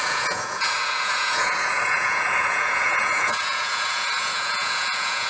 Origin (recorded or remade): remade